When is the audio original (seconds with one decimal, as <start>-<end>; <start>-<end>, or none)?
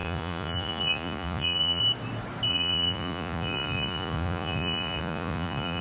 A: 1.8-2.5